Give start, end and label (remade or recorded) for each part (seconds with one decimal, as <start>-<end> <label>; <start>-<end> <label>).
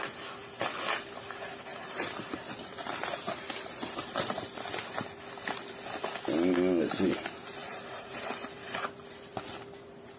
0.0-1.7 recorded; 1.7-4.4 remade; 4.4-7.6 recorded; 7.6-8.3 remade; 8.3-10.2 recorded